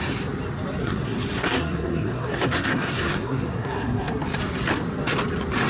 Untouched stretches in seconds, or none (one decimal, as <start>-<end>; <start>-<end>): 0.0-0.8; 4.2-5.7